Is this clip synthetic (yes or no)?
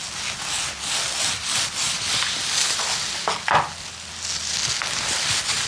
no